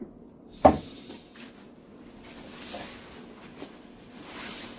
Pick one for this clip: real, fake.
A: fake